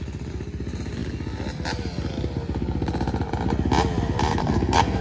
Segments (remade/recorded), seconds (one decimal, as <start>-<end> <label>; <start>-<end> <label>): 0.0-4.4 recorded; 4.4-5.0 remade